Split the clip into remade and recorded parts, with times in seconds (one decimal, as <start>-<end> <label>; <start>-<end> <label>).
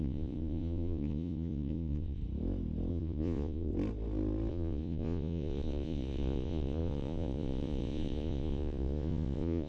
0.0-2.2 remade; 2.2-2.9 recorded; 2.9-3.7 remade; 3.7-4.5 recorded; 4.5-9.7 remade